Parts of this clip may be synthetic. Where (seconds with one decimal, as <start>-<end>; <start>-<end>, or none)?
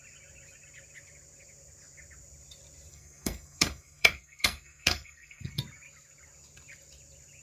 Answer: 2.9-5.6